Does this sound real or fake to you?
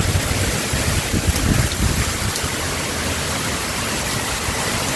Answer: real